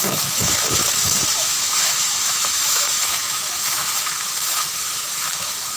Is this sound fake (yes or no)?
yes